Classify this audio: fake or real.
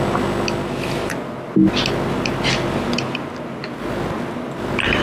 real